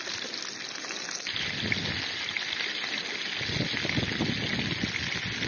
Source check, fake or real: real